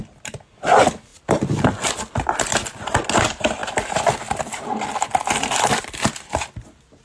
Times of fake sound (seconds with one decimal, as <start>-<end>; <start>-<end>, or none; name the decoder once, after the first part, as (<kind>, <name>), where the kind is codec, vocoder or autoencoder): 1.1-1.9 (vocoder, BigVGAN v2)